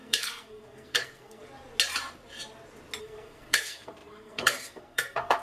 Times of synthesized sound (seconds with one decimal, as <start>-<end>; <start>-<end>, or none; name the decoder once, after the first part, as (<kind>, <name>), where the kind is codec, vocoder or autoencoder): 0.0-1.4 (codec, SNAC); 3.0-5.4